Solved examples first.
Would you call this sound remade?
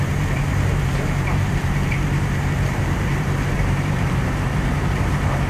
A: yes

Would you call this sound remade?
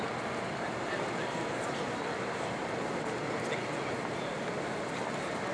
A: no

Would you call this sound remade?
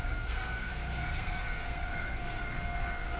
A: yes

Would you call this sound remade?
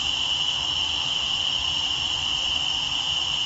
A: no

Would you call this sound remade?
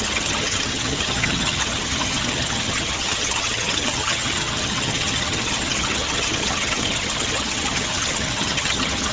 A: yes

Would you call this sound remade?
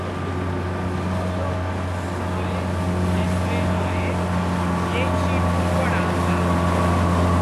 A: no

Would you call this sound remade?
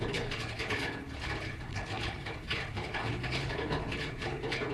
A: yes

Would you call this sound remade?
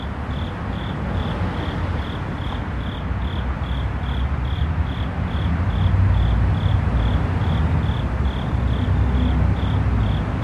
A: no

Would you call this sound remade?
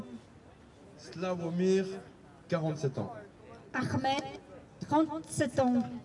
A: no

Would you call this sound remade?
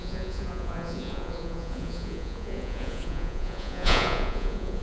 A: yes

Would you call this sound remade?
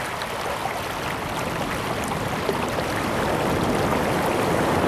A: no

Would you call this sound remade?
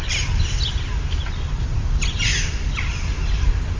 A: no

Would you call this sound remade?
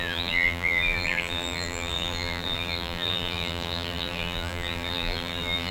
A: yes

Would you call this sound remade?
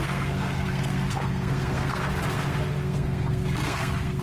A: yes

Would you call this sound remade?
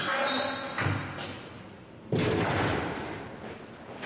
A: no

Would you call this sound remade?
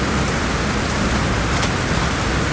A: no